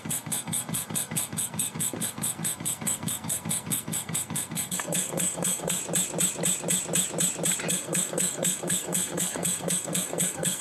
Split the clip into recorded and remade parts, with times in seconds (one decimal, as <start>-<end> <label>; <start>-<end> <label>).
0.0-5.8 remade; 5.8-7.7 recorded; 7.7-10.6 remade